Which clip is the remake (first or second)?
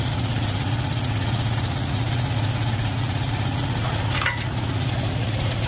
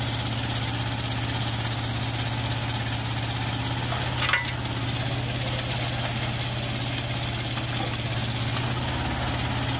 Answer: first